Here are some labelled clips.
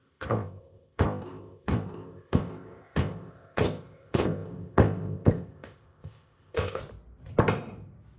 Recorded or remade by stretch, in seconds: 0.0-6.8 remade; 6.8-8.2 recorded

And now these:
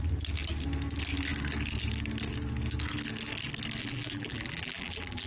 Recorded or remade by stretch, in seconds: 0.0-3.8 recorded; 3.8-5.3 remade

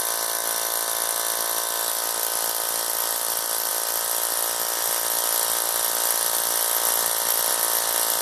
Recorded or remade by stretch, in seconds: 0.0-8.2 recorded

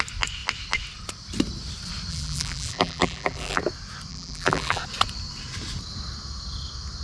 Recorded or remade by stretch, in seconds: 0.0-2.1 recorded; 2.1-3.6 remade; 3.6-4.1 recorded; 4.1-4.8 remade; 4.8-7.0 recorded

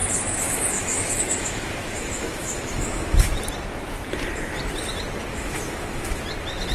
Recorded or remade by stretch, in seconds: 0.0-3.4 remade; 3.4-5.3 recorded; 5.3-6.2 remade; 6.2-6.7 recorded

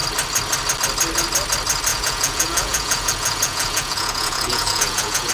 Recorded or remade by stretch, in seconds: 0.0-1.9 recorded; 1.9-5.3 remade

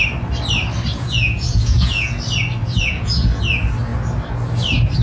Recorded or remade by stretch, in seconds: 0.0-0.9 recorded; 0.9-2.1 remade; 2.1-2.6 recorded; 2.6-3.4 remade; 3.4-5.0 recorded